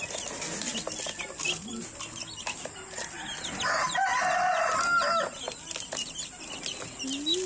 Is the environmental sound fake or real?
real